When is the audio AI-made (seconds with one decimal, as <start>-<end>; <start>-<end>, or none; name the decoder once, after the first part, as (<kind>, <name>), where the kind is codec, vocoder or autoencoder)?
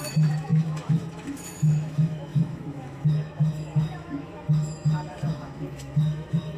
0.0-6.6 (autoencoder, DAC-VAE)